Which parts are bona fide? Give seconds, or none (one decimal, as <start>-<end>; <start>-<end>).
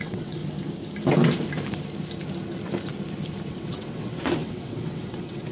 0.4-3.5